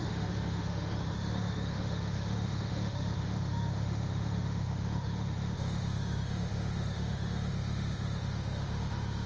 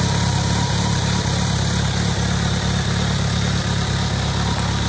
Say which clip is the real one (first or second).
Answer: second